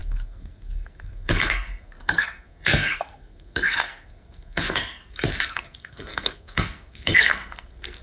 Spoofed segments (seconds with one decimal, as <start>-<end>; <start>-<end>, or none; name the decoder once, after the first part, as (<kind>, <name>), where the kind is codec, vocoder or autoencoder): 0.0-8.0 (codec, SNAC)